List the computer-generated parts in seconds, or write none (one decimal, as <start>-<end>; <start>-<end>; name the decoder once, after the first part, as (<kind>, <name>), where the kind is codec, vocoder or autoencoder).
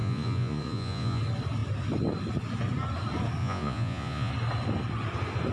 0.0-1.2 (vocoder, Vocos); 3.4-4.3